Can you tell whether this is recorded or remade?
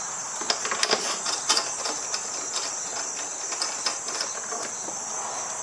recorded